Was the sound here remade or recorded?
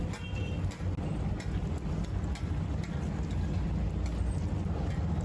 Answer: recorded